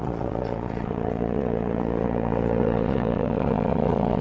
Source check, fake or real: fake